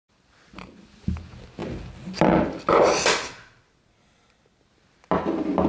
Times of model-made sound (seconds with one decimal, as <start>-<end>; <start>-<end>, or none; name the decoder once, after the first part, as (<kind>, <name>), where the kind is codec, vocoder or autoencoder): none

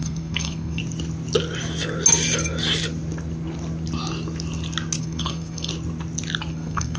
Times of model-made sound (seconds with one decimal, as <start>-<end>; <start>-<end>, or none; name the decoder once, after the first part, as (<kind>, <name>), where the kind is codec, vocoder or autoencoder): 0.0-0.8 (codec, SNAC); 5.0-5.7; 6.5-7.0

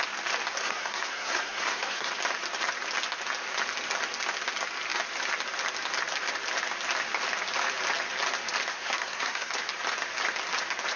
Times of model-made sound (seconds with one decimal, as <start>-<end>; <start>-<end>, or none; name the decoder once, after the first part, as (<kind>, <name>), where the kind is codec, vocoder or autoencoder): 0.6-2.1 (codec, SNAC); 8.7-9.5

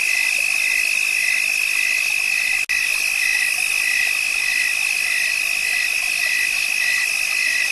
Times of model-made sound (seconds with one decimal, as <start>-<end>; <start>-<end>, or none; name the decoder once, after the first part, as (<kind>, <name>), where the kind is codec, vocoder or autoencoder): none

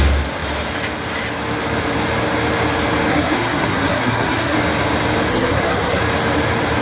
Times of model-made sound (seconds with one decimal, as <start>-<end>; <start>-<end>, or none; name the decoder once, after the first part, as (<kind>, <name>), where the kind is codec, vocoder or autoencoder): 3.1-4.6 (codec, SNAC); 5.3-6.0

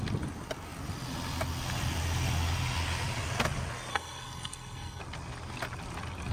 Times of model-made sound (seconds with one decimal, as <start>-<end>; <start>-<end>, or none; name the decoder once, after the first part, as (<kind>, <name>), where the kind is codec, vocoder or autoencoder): 3.9-5.0 (codec, SNAC)